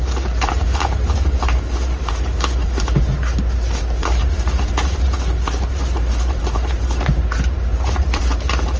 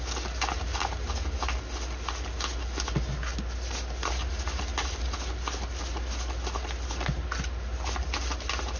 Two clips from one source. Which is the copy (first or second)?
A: first